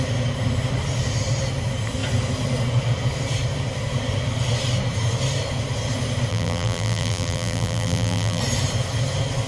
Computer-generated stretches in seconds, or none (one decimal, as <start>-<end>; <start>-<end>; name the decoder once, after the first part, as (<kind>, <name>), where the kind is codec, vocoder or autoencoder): 6.3-8.4 (vocoder, BigVGAN v2)